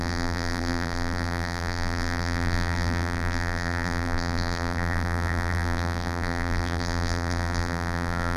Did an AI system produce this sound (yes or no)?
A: yes